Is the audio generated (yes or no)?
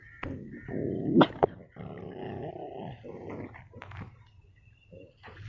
no